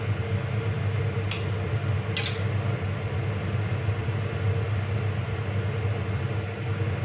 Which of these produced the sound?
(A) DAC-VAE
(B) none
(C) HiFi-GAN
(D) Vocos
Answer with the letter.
B